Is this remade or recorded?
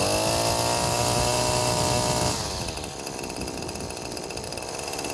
recorded